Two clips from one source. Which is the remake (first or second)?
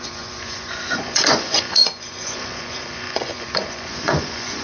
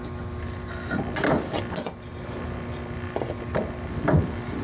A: first